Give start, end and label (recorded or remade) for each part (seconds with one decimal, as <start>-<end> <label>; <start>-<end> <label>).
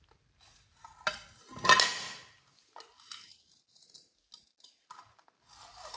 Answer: 0.0-6.0 recorded